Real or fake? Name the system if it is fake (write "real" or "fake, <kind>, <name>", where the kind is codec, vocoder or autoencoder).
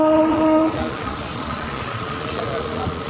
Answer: fake, vocoder, Vocos